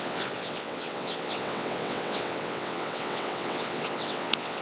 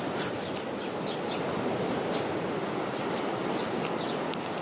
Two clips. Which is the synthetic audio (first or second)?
first